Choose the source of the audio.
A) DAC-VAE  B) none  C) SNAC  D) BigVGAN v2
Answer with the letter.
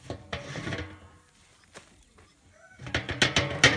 B